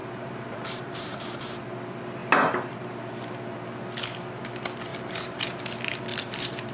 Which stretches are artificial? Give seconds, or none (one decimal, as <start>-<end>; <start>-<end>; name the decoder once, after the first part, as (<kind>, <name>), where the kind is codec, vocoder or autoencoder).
0.0-1.6 (vocoder, BigVGAN v2); 4.9-5.6; 6.1-6.7